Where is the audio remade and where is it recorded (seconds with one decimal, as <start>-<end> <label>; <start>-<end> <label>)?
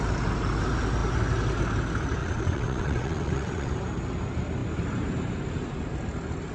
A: 0.0-2.2 recorded; 2.2-3.7 remade; 3.7-6.5 recorded